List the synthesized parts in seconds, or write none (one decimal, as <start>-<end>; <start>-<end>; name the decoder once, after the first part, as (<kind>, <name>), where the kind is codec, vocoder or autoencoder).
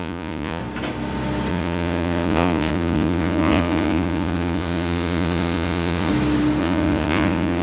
0.0-0.6 (vocoder, Vocos); 1.5-6.1; 6.6-7.6